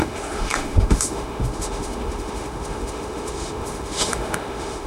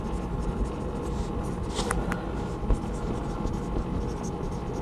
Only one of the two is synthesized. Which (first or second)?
first